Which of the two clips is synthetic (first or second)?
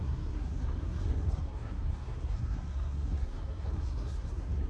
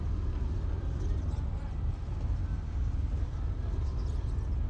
first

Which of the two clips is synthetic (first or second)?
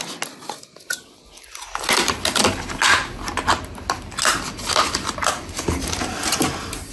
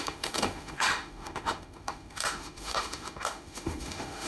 second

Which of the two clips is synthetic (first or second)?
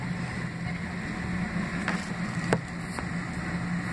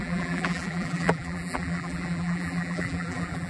second